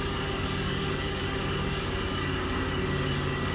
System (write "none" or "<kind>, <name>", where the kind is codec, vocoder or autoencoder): codec, DAC